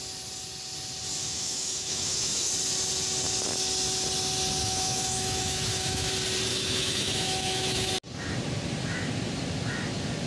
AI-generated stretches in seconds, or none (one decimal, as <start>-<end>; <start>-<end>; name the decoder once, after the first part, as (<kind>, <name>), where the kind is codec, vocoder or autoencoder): 1.2-2.5 (autoencoder, DAC-VAE); 4.6-6.1; 6.5-7.9